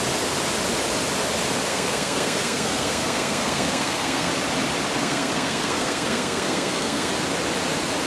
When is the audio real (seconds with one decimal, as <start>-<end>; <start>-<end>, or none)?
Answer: 0.0-1.7; 4.3-5.0; 7.1-8.1

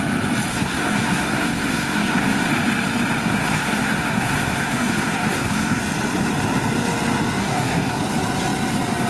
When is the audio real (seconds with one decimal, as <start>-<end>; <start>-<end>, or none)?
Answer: 0.0-0.5; 2.5-3.2; 5.8-7.4; 8.0-9.1

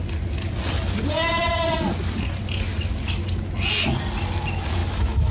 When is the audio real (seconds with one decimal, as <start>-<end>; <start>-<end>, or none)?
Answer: 0.0-4.8